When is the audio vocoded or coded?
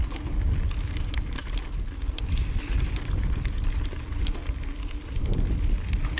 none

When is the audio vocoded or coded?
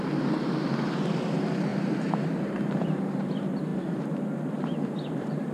1.7-3.0; 3.7-5.5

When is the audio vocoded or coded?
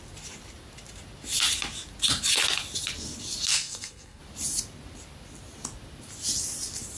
3.5-4.2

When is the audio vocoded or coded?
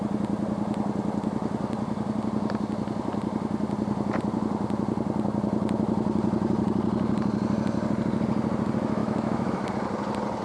9.0-9.7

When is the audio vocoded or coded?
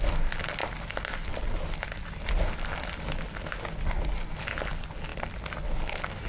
none